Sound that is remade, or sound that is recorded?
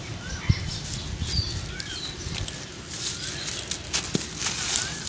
recorded